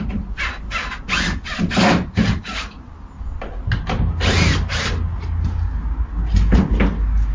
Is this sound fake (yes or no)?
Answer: no